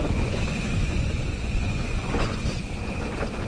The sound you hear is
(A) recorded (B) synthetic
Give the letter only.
B